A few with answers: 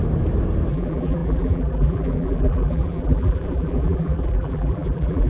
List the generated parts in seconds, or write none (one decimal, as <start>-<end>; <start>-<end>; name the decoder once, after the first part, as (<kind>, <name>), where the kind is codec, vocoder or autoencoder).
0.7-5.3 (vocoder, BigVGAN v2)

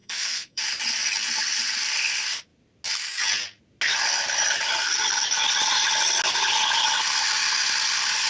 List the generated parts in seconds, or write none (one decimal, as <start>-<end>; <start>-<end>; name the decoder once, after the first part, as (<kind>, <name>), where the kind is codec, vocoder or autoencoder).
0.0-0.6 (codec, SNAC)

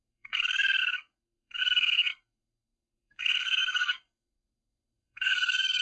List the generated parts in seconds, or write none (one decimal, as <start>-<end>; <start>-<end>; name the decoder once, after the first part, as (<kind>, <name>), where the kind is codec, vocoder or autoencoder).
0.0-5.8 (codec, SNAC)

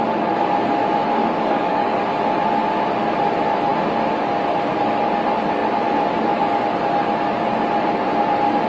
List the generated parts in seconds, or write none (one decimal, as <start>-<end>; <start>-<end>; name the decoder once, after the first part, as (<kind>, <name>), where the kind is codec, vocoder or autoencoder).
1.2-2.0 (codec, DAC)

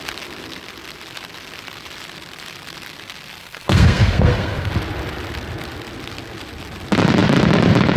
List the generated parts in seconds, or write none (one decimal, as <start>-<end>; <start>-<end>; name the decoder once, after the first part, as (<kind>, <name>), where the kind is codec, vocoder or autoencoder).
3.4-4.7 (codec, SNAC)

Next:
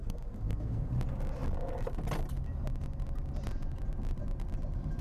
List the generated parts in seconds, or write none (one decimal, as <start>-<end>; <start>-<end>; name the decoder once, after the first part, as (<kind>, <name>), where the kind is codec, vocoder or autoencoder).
0.0-0.9 (codec, SNAC)

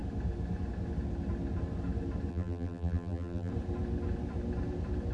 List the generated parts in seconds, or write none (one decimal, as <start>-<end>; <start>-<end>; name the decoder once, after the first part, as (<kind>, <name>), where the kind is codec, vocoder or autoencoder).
2.3-3.5 (vocoder, BigVGAN v2)